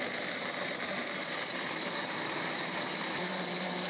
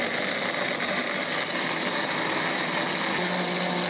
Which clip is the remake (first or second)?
first